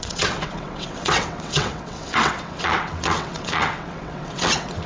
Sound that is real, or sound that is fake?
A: fake